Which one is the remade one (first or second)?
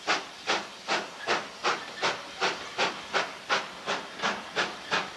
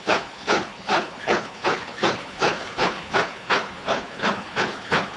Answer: second